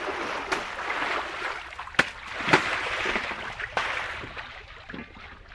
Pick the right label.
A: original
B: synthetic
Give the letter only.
A